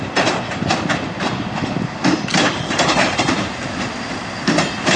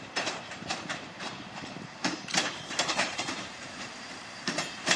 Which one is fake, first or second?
second